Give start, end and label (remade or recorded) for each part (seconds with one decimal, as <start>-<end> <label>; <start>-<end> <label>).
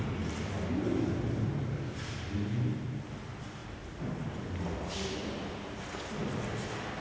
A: 0.0-7.0 recorded